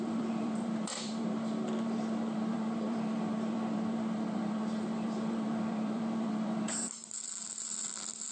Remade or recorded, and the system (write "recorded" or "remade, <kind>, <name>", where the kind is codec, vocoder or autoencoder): remade, vocoder, BigVGAN v2